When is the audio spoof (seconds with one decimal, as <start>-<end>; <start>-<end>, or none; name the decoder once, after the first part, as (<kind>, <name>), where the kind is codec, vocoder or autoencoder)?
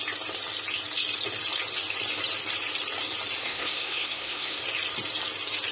3.4-4.6 (codec, SNAC)